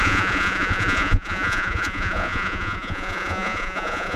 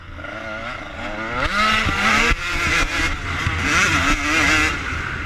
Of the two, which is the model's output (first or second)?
first